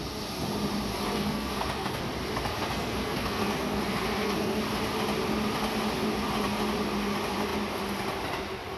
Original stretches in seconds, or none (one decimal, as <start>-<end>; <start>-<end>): 0.0-0.9; 2.0-2.6; 4.6-8.8

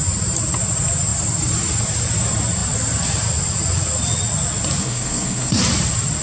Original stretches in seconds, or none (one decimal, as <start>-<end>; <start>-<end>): 0.0-4.8; 5.6-6.2

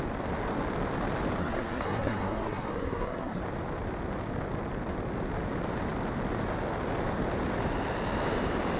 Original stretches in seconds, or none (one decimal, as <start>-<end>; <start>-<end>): 0.0-1.4; 3.4-8.8

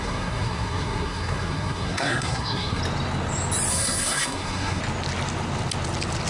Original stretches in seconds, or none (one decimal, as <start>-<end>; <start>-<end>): 2.8-3.7; 4.8-6.3

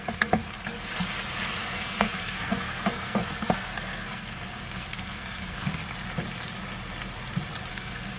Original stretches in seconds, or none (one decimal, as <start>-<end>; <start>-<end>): 0.4-1.6; 5.8-7.7

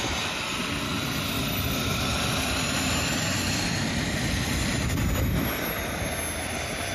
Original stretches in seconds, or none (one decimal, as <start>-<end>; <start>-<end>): 0.0-6.9

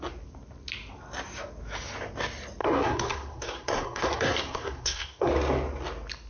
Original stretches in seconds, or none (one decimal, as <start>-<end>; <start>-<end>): 0.0-2.6; 5.3-6.3

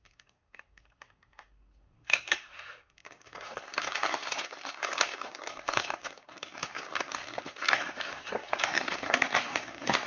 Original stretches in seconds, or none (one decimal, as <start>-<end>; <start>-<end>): none